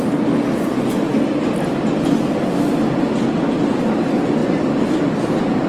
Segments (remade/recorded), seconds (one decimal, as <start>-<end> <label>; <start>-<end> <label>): 0.0-4.4 recorded; 4.4-5.7 remade